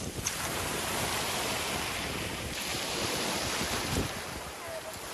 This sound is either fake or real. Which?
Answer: fake